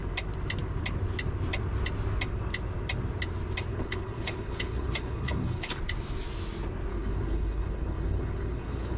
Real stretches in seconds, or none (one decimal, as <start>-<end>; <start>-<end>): 0.0-3.7; 5.8-6.9